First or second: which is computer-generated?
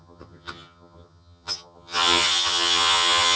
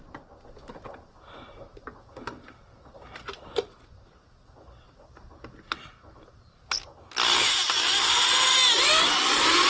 first